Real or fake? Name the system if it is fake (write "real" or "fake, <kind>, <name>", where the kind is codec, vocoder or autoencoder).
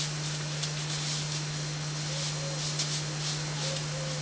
real